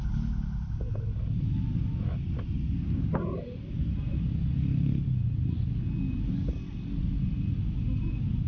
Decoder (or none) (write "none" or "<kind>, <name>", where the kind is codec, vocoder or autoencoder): none